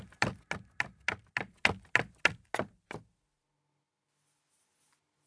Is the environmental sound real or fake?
real